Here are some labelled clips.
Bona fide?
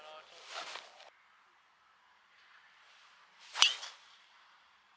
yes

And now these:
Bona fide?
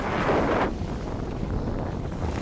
yes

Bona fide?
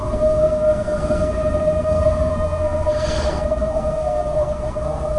no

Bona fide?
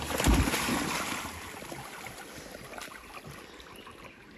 yes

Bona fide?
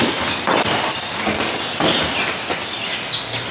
yes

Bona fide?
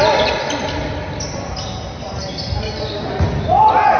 yes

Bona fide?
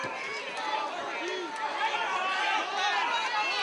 yes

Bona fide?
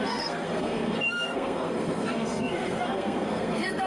no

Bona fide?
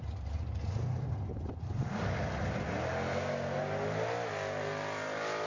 yes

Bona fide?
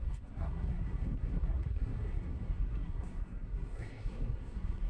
no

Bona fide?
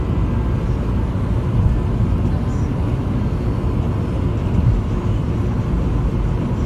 yes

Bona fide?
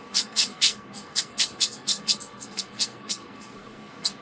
no